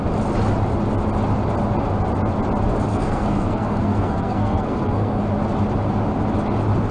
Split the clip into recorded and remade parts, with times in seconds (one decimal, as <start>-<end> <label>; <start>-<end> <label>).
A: 0.0-2.9 recorded; 2.9-5.3 remade; 5.3-6.9 recorded